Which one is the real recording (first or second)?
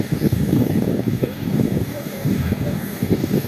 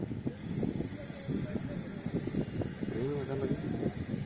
second